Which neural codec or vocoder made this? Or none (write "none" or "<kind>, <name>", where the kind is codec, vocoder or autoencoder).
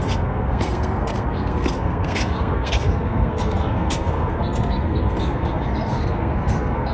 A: codec, SNAC